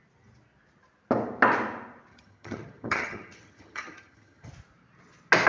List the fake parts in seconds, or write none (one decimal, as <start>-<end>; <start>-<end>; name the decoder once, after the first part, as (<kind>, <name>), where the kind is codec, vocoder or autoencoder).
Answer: 2.1-4.5 (vocoder, HiFi-GAN)